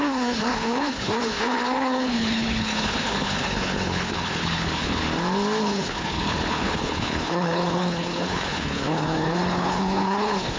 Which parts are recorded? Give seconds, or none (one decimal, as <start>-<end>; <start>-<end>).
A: 5.0-5.6